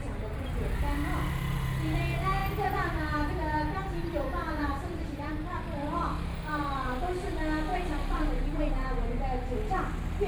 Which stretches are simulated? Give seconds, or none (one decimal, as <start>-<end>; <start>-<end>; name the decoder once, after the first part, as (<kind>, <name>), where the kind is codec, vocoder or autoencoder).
2.4-3.3 (vocoder, BigVGAN v2); 4.0-5.4